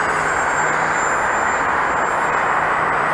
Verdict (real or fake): real